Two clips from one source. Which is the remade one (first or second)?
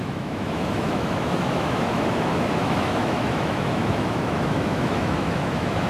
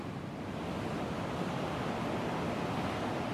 first